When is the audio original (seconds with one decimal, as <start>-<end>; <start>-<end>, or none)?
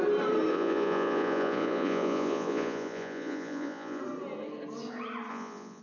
0.0-0.5; 4.0-5.3